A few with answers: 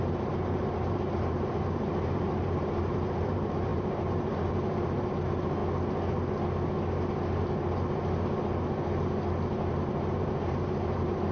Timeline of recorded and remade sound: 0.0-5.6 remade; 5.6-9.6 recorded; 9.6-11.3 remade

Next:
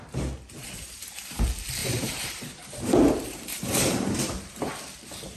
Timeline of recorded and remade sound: 0.0-0.6 recorded; 0.6-1.4 remade; 1.4-1.8 recorded; 1.8-4.7 remade; 4.7-5.4 recorded

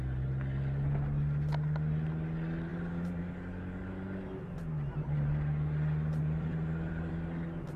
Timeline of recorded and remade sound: 0.0-2.7 recorded; 2.7-3.2 remade; 3.2-6.2 recorded; 6.2-7.1 remade; 7.1-7.8 recorded

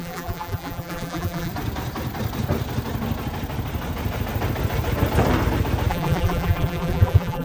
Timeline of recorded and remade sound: 0.0-1.5 remade; 1.5-5.9 recorded; 5.9-7.4 remade

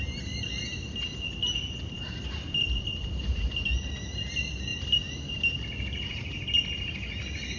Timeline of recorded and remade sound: 0.0-1.4 recorded; 1.4-3.9 remade; 3.9-4.7 recorded; 4.7-5.6 remade; 5.6-7.6 recorded

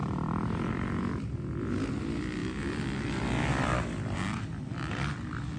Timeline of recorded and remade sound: 0.0-0.7 remade; 0.7-2.4 recorded; 2.4-4.9 remade; 4.9-5.6 recorded

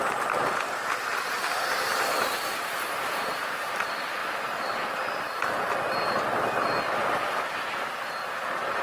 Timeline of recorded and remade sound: 0.0-1.5 recorded; 1.5-3.7 remade; 3.7-8.8 recorded